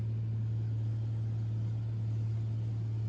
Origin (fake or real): real